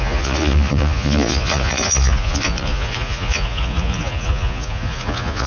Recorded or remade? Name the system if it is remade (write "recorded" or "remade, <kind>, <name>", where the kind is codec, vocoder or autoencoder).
remade, vocoder, Vocos